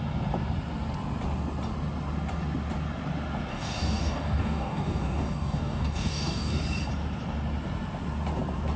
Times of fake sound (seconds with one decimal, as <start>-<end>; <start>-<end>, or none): 3.5-6.5